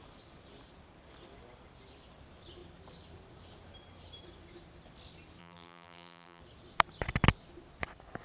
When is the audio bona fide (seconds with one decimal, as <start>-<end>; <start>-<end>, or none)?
0.0-5.4; 6.4-8.2